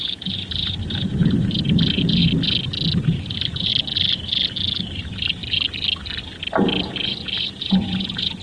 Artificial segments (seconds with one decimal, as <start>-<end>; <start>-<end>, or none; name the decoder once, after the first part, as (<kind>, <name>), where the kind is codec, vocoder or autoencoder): 0.0-2.2 (vocoder, BigVGAN v2); 3.0-3.7; 4.8-5.4; 7.6-8.4